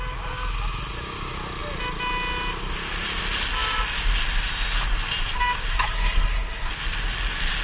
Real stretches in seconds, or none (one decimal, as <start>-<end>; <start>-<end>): 0.0-5.7; 6.7-7.6